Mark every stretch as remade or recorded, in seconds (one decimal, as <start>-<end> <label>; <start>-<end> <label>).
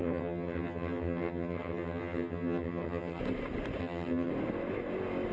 0.0-3.2 remade; 3.2-3.8 recorded; 3.8-4.3 remade; 4.3-5.3 recorded